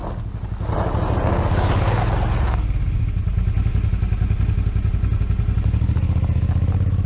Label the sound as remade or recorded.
recorded